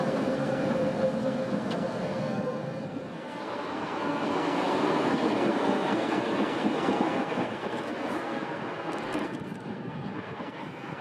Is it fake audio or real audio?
fake